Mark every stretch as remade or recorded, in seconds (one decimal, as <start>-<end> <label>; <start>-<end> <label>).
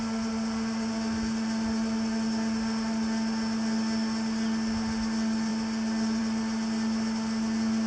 0.0-7.9 recorded